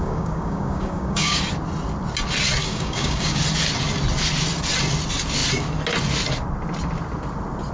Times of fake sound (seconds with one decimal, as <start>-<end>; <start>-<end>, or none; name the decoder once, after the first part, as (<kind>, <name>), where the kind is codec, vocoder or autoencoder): 0.0-1.4 (codec, DAC); 2.6-3.4